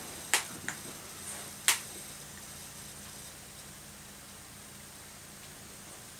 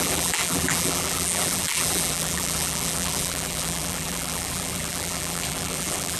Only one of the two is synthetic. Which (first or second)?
second